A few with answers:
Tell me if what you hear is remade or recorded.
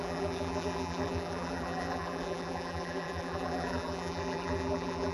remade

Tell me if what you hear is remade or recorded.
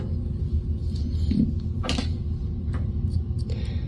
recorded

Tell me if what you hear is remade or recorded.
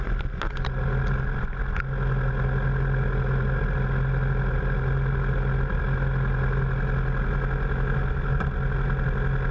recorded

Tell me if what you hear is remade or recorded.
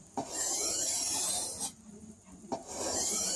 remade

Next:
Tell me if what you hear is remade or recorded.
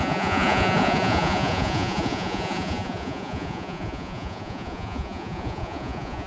remade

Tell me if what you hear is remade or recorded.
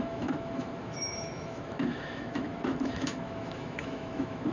remade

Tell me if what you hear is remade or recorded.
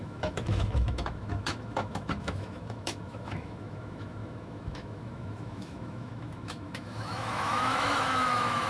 remade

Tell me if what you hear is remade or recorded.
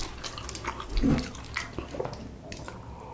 recorded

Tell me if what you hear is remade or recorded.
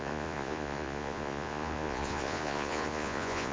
remade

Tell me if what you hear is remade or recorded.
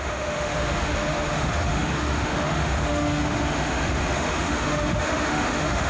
remade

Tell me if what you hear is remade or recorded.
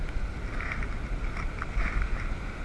recorded